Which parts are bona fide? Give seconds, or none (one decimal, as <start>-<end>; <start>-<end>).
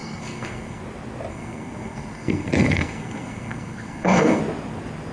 0.8-1.3; 4.4-5.1